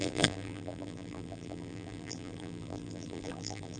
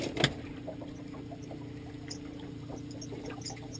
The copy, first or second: first